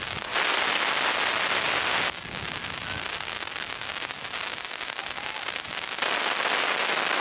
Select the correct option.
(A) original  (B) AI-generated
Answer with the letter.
A